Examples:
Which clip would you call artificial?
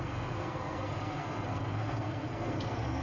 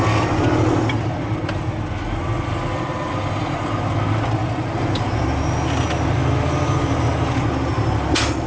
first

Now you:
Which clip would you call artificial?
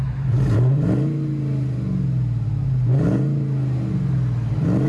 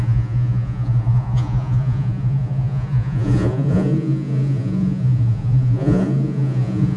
second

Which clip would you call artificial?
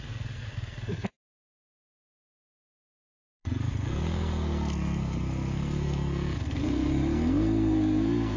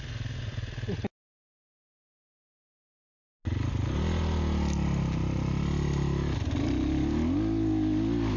first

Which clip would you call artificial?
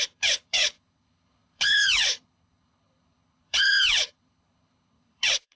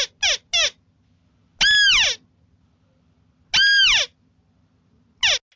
first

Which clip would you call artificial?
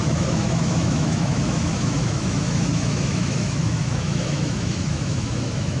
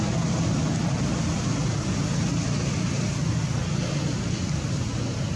first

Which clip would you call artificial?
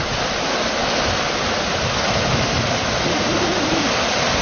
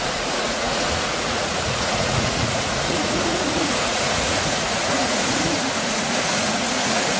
second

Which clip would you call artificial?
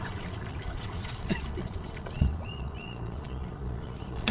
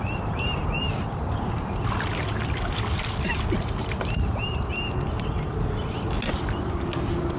first